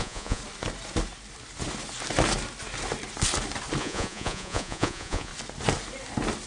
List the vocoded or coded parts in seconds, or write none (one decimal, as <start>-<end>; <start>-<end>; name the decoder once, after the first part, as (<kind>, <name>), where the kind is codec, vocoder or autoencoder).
0.0-0.4 (vocoder, Vocos); 3.8-5.3